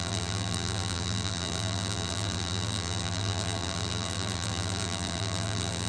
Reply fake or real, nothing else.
fake